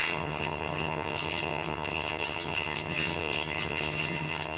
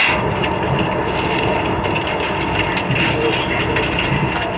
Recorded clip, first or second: second